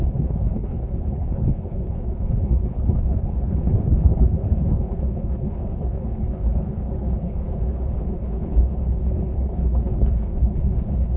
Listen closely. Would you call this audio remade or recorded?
remade